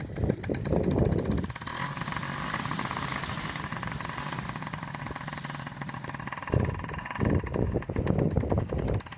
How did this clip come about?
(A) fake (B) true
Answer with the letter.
B